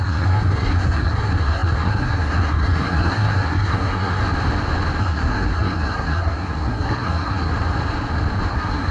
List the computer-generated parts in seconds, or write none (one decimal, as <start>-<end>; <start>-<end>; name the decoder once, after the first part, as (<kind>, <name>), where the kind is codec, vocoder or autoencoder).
0.0-4.2 (codec, SNAC); 5.0-7.5; 8.5-8.9